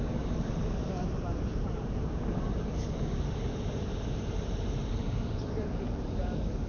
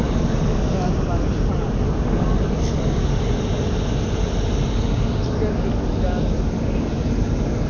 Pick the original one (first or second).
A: second